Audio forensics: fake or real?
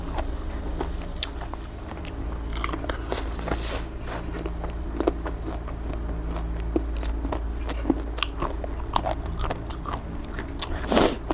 real